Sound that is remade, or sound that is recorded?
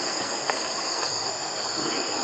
remade